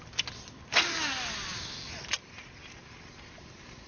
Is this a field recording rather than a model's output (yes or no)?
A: yes